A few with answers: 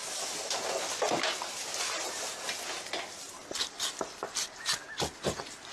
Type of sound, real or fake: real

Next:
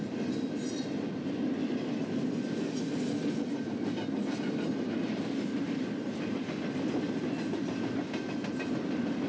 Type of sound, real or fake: real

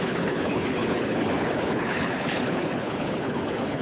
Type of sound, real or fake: fake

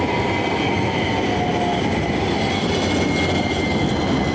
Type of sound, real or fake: real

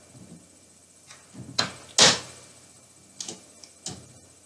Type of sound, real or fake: real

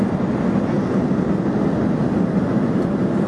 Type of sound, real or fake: real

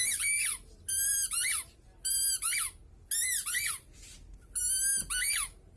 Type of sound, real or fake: real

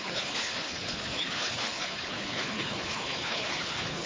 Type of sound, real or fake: fake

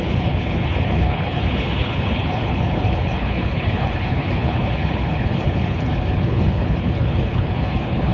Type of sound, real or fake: fake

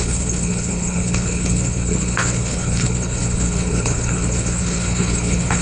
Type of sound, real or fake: fake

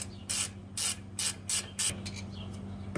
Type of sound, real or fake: real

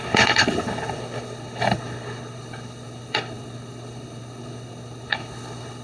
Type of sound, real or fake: fake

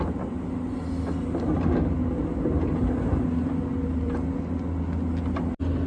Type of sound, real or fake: real